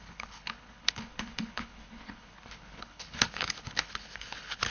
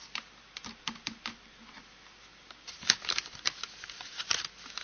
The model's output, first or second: first